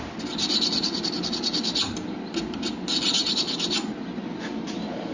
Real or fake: real